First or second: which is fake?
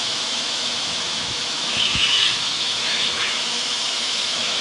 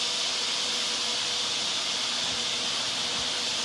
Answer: first